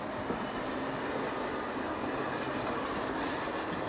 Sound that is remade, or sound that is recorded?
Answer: recorded